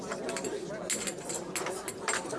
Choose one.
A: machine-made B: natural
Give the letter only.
B